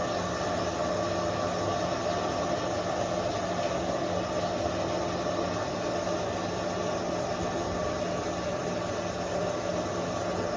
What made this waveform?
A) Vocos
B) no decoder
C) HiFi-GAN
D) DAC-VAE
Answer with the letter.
B